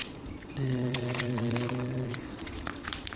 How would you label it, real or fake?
fake